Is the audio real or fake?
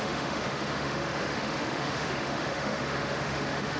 fake